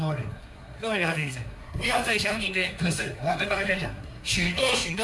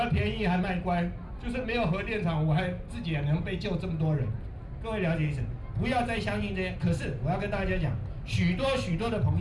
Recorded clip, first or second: second